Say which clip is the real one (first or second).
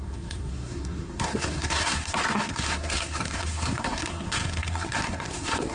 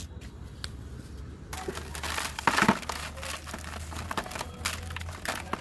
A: second